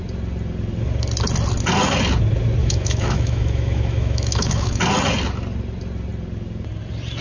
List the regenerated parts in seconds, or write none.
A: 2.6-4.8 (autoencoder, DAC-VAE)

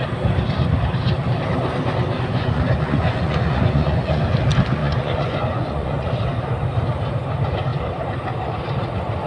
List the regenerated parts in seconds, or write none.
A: 2.3-4.2 (vocoder, Vocos); 4.8-6.1

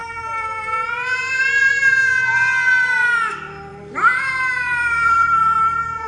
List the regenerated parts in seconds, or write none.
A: 0.0-1.4 (vocoder, BigVGAN v2); 3.7-5.6

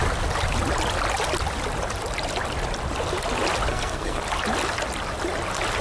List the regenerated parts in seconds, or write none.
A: 3.7-4.2 (codec, SNAC)

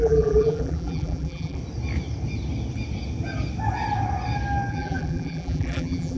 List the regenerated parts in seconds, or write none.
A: 0.0-1.6 (vocoder, BigVGAN v2); 4.7-6.2

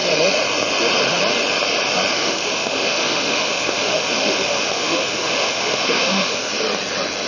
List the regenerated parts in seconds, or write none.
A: 2.1-6.5 (autoencoder, DAC-VAE)